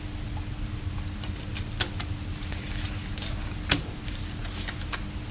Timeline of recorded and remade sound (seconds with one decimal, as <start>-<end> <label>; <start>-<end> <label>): 0.0-5.3 recorded